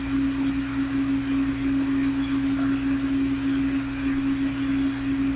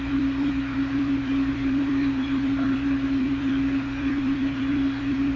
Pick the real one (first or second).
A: first